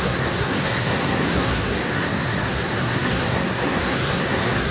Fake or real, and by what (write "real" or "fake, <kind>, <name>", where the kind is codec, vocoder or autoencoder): fake, codec, SNAC